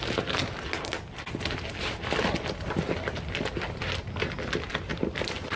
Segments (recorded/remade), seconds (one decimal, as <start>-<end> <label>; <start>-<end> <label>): 0.0-4.9 recorded; 4.9-5.6 remade